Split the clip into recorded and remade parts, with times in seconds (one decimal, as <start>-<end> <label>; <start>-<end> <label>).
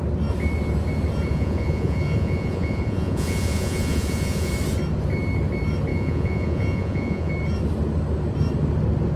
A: 0.0-1.3 recorded; 1.3-4.5 remade; 4.5-5.9 recorded; 5.9-7.3 remade; 7.3-9.2 recorded